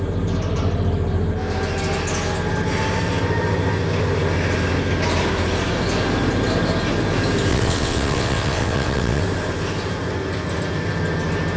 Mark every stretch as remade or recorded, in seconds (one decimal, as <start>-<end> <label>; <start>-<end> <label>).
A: 0.0-7.5 recorded; 7.5-9.2 remade; 9.2-11.6 recorded